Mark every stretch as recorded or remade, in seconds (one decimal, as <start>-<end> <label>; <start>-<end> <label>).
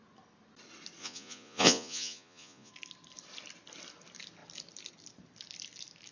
0.0-1.0 recorded; 1.0-2.7 remade; 2.7-6.1 recorded